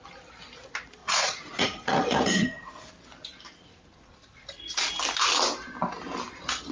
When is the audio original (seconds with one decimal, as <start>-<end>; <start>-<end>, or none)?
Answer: 0.0-1.0; 2.9-3.7; 4.9-6.7